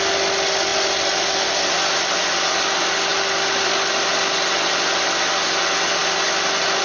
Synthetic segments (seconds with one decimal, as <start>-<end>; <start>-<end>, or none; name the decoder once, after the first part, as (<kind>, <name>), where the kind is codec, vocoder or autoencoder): none